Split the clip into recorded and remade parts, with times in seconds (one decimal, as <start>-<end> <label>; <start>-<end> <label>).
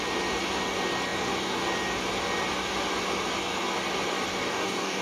0.0-4.4 recorded; 4.4-5.0 remade